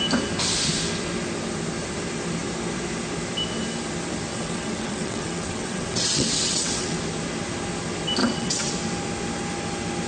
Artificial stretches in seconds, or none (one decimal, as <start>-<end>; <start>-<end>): 4.3-7.0; 8.2-8.7